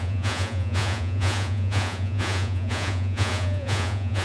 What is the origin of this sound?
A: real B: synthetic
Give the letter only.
B